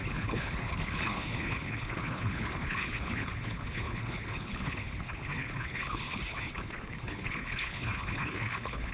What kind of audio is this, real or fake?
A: fake